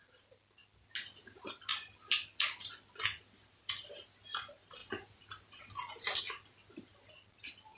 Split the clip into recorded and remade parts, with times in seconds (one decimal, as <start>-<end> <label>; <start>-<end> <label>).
0.0-1.7 recorded; 1.7-2.7 remade; 2.7-4.8 recorded; 4.8-6.2 remade; 6.2-7.8 recorded